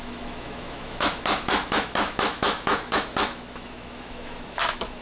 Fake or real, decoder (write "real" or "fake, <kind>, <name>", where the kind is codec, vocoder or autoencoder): fake, autoencoder, DAC-VAE